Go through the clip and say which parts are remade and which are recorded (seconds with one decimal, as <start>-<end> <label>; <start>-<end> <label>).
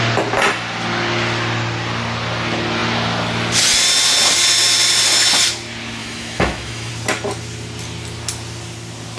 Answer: 0.0-6.0 recorded; 6.0-6.9 remade; 6.9-9.2 recorded